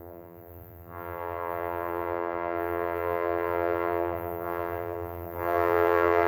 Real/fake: fake